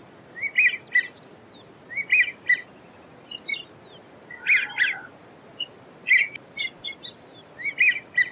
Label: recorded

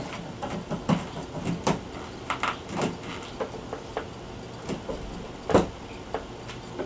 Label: recorded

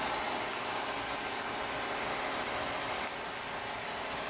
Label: recorded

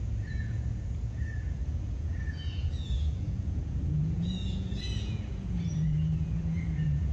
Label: remade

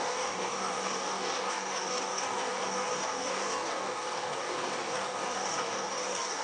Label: remade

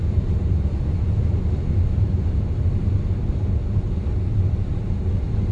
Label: recorded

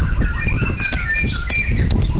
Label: recorded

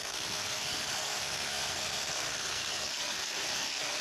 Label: remade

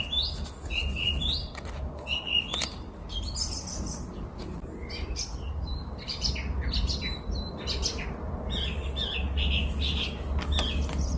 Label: recorded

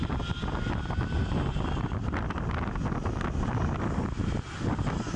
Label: recorded